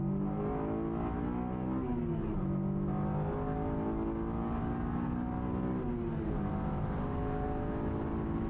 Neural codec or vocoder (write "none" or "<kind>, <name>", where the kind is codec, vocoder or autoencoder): none